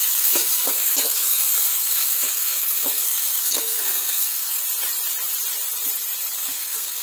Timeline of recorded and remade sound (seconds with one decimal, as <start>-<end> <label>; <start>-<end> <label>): 0.0-4.6 remade; 4.6-6.4 recorded; 6.4-7.0 remade

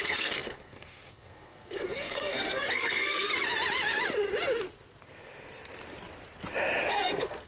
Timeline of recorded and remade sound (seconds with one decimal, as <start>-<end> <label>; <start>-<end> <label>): 0.0-3.3 remade; 3.3-6.9 recorded; 6.9-7.5 remade

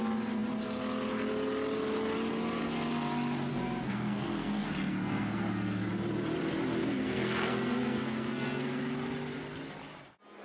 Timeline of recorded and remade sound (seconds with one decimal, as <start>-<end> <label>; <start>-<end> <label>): 0.0-3.5 recorded; 3.5-5.9 remade; 5.9-6.8 recorded; 6.8-8.8 remade; 8.8-10.4 recorded

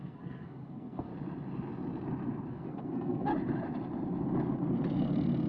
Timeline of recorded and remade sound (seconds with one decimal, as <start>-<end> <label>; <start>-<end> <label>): 0.0-1.1 remade; 1.1-2.5 recorded; 2.5-3.3 remade; 3.3-5.5 recorded

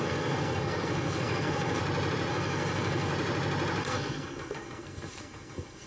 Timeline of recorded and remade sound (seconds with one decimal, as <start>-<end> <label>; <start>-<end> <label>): 0.0-1.8 remade; 1.8-2.3 recorded; 2.3-3.1 remade; 3.1-3.8 recorded; 3.8-5.9 remade

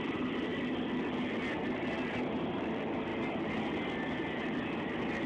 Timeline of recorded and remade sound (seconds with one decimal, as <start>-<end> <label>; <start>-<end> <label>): 0.0-5.3 recorded